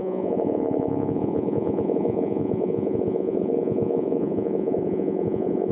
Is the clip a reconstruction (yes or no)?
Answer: yes